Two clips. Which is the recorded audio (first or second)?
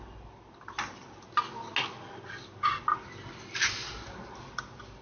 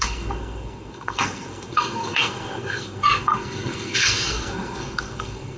first